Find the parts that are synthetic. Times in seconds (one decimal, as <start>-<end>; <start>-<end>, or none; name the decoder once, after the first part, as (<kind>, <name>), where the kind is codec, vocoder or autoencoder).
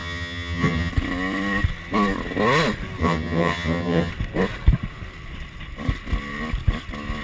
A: 0.0-0.9 (vocoder, HiFi-GAN); 3.0-4.1